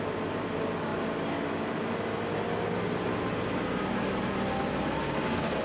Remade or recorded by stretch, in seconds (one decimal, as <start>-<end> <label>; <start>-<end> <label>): 0.0-5.6 recorded